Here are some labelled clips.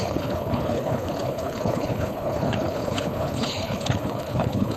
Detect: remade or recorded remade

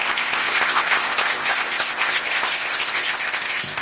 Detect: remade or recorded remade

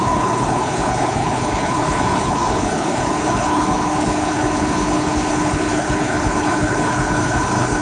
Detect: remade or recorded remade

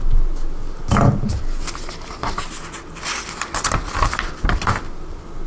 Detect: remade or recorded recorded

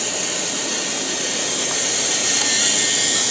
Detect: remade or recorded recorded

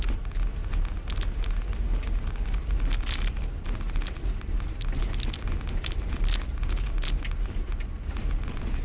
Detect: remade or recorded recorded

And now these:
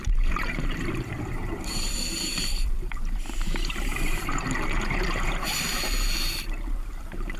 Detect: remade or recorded remade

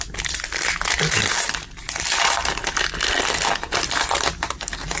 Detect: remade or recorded recorded